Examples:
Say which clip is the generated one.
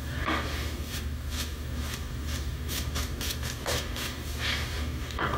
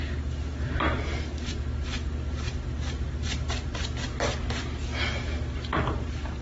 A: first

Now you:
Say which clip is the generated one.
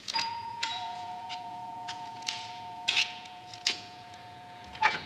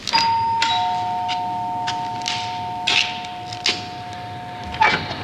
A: first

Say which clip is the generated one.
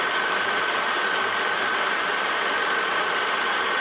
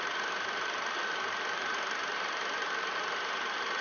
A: second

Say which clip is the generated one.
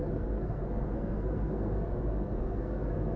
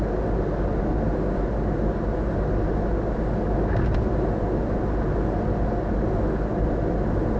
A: first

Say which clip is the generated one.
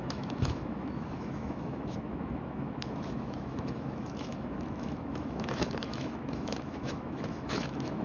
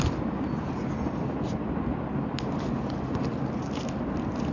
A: first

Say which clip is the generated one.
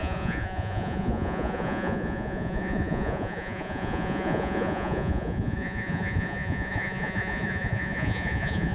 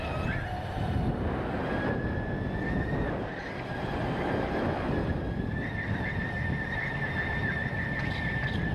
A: first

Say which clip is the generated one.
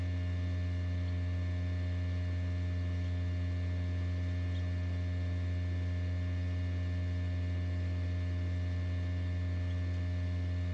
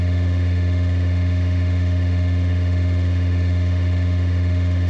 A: second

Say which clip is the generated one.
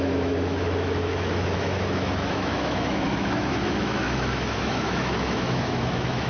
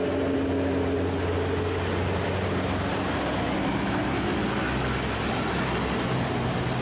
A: first